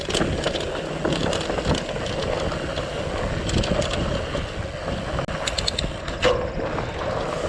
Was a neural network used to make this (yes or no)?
no